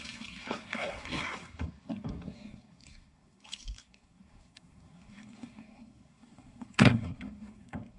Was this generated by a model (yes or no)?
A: yes